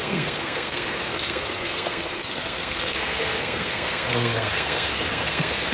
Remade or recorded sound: remade